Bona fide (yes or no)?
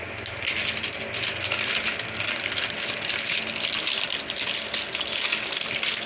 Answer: yes